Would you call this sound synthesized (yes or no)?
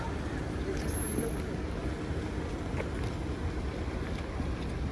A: no